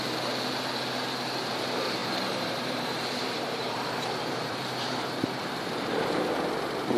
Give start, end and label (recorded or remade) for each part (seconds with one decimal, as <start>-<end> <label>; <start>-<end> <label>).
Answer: 0.0-2.0 recorded; 2.0-6.2 remade; 6.2-7.0 recorded